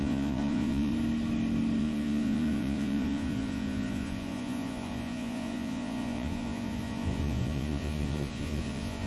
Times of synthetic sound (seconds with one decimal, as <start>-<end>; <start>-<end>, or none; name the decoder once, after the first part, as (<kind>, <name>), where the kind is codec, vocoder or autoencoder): 0.0-0.9 (vocoder, Vocos); 1.8-9.1